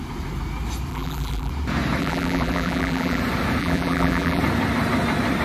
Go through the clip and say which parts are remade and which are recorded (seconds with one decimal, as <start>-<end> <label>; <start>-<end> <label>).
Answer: 0.0-0.9 recorded; 0.9-1.5 remade; 1.5-2.0 recorded; 2.0-3.2 remade; 3.2-3.6 recorded; 3.6-4.4 remade; 4.4-5.4 recorded

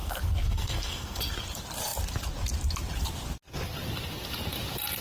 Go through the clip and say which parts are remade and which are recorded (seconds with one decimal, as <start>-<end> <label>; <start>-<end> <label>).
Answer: 0.0-1.2 remade; 1.2-5.0 recorded

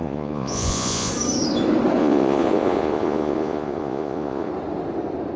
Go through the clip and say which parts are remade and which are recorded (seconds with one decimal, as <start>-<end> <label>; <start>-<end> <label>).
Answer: 0.0-1.1 remade; 1.1-2.0 recorded; 2.0-4.5 remade; 4.5-5.4 recorded

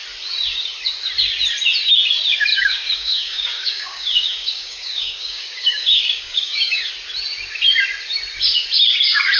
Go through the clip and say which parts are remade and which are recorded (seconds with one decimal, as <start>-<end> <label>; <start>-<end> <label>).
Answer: 0.0-2.5 recorded; 2.5-6.9 remade; 6.9-9.4 recorded

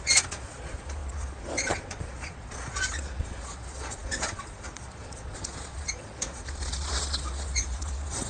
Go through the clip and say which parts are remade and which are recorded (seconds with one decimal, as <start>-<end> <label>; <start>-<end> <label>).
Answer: 0.0-8.3 remade

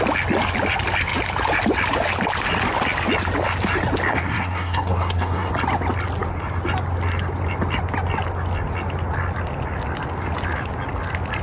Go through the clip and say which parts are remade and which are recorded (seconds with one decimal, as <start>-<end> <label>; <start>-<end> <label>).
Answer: 0.0-4.1 recorded; 4.1-5.5 remade; 5.5-11.4 recorded

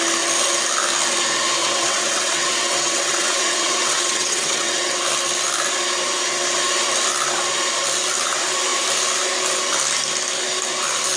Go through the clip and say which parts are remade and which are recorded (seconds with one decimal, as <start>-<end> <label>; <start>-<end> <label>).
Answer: 0.0-1.6 recorded; 1.6-5.0 remade; 5.0-11.2 recorded